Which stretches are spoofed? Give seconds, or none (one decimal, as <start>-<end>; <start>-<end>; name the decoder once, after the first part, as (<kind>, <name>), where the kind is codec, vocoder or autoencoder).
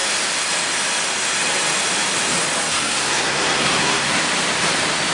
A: 2.7-4.1 (codec, SNAC)